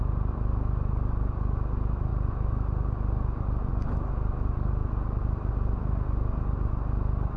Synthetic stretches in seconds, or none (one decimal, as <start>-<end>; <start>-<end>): none